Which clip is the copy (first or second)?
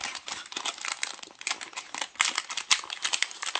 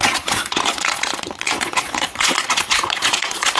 second